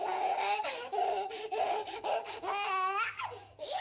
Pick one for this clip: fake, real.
fake